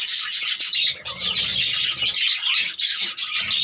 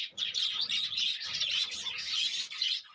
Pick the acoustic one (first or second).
first